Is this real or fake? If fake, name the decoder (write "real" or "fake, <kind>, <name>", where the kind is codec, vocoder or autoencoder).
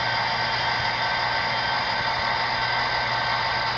real